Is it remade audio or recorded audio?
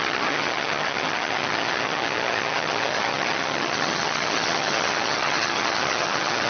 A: remade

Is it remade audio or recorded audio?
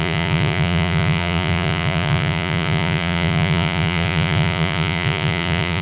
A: remade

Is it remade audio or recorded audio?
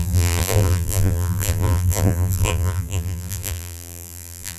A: remade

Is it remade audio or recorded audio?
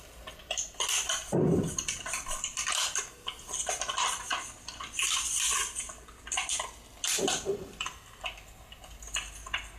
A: recorded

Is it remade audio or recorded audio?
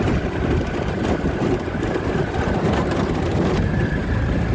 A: remade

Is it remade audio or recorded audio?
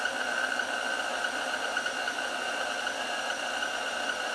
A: recorded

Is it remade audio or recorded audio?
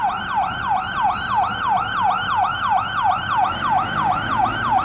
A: recorded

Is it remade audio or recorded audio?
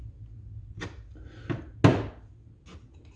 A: recorded